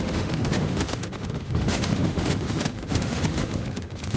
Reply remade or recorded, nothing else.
remade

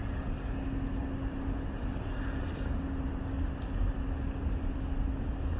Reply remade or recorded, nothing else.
recorded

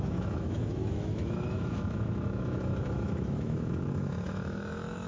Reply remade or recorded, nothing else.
remade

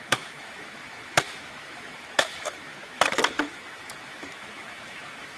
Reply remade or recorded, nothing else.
remade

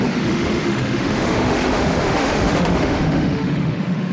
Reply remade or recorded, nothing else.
remade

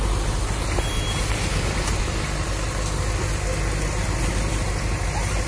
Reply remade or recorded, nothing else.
recorded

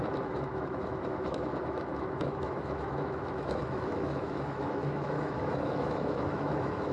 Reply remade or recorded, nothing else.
remade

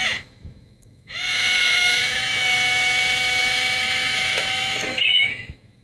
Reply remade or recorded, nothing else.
remade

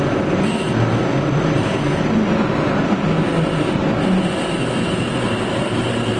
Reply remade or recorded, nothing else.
recorded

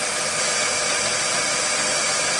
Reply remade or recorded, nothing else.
recorded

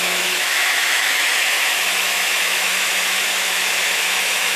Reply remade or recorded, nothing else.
remade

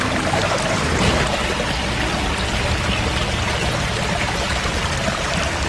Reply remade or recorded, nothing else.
recorded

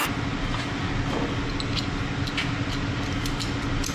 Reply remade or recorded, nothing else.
recorded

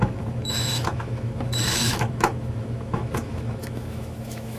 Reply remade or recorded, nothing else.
remade